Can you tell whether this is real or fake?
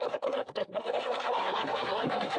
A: fake